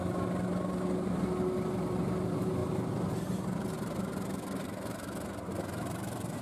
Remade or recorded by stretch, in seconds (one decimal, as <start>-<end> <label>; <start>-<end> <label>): 0.0-6.4 recorded